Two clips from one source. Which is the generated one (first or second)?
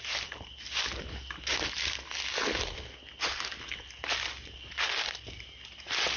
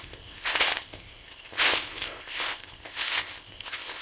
second